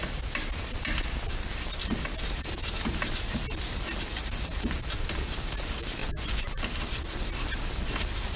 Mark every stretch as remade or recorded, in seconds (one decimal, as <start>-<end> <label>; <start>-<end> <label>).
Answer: 0.0-6.0 recorded; 6.0-6.6 remade; 6.6-8.4 recorded